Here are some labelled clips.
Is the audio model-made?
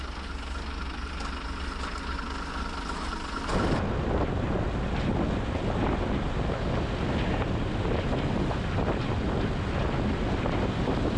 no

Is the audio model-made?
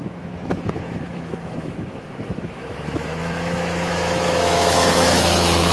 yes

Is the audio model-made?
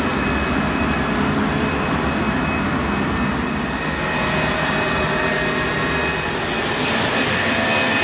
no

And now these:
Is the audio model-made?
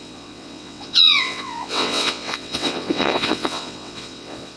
yes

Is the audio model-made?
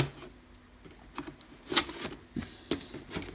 no